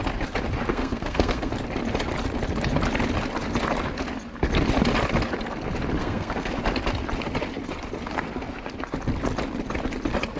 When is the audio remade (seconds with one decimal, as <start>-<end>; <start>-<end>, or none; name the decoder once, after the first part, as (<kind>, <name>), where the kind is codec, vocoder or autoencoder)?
0.7-1.5 (codec, SNAC); 6.0-6.5